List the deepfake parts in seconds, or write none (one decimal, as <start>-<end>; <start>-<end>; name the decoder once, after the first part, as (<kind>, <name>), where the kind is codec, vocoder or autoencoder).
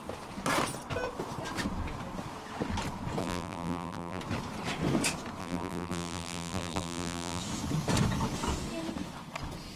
3.2-4.2 (vocoder, BigVGAN v2); 5.4-7.4